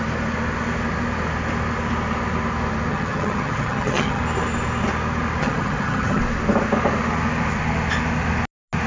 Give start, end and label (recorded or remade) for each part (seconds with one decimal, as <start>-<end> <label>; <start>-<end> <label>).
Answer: 0.0-2.9 recorded; 2.9-4.2 remade; 4.2-5.4 recorded; 5.4-6.2 remade; 6.2-8.9 recorded